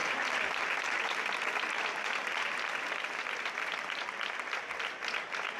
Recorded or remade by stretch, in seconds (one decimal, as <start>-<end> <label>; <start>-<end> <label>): 0.0-5.6 recorded